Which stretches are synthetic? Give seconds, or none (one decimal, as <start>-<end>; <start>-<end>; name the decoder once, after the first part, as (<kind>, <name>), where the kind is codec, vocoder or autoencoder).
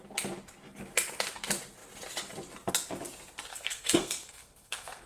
3.5-5.1 (codec, SNAC)